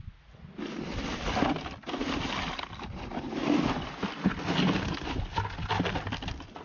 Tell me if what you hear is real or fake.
real